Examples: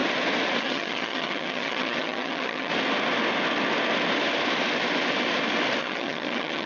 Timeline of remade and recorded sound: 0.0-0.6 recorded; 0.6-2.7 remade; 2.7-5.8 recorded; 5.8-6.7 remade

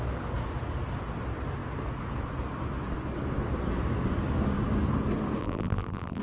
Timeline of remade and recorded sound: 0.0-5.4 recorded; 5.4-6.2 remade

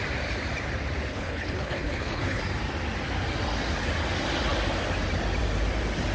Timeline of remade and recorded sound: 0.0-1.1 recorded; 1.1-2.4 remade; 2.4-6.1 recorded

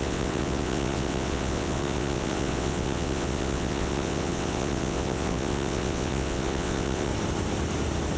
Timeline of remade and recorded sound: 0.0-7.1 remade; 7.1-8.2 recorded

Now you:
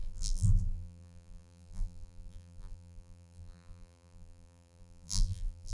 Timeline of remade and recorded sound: 0.0-5.7 remade

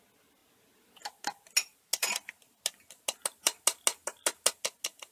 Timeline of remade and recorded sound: 0.0-5.1 recorded

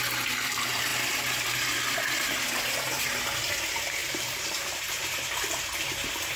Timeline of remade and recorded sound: 0.0-4.0 recorded; 4.0-5.2 remade; 5.2-6.4 recorded

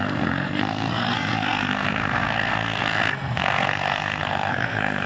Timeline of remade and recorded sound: 0.0-5.1 remade